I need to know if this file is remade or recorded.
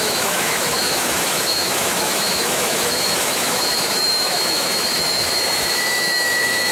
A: remade